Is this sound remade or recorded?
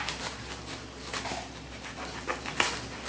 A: recorded